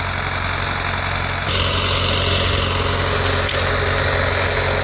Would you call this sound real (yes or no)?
yes